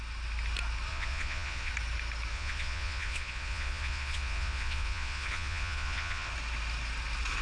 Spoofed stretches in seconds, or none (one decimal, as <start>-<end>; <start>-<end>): 0.9-1.7; 2.3-6.3